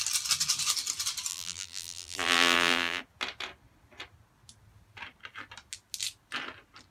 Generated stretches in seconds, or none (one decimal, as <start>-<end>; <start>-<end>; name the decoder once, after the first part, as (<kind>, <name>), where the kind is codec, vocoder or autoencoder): 1.3-3.0 (vocoder, BigVGAN v2)